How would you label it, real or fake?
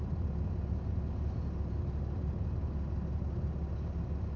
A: real